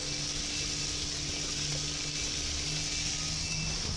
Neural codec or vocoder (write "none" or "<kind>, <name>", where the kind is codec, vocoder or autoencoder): none